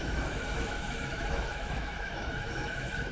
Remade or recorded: remade